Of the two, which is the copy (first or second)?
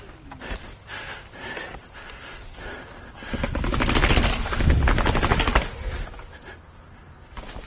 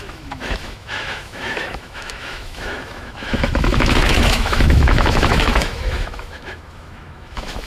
second